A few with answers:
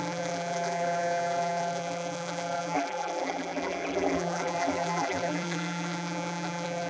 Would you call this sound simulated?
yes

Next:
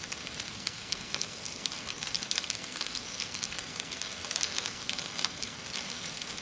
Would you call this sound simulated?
yes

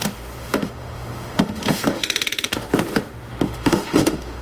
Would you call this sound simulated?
yes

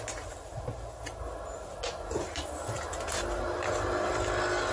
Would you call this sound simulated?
no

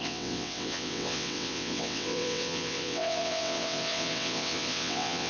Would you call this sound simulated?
yes